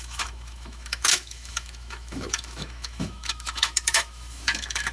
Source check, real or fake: fake